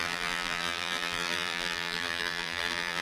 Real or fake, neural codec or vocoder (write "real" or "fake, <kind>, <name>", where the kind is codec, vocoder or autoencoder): fake, vocoder, BigVGAN v2